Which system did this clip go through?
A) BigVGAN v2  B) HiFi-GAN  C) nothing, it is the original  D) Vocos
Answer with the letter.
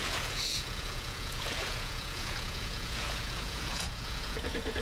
D